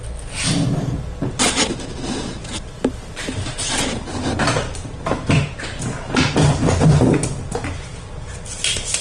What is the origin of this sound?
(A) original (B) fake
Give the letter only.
A